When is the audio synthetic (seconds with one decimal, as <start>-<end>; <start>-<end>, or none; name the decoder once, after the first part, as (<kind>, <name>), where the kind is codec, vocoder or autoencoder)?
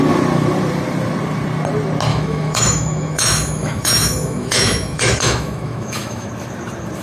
2.1-6.3 (autoencoder, DAC-VAE)